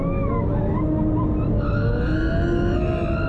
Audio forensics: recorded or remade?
recorded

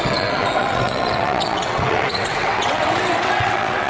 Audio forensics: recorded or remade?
remade